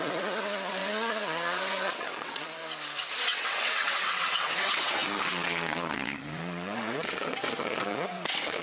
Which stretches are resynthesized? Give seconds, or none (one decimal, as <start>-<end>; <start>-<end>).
0.0-2.6; 3.2-8.6